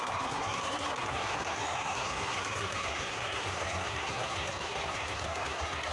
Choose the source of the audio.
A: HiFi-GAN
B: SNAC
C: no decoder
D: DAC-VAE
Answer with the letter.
B